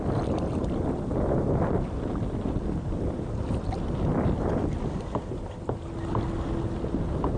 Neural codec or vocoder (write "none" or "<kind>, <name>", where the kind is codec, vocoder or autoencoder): none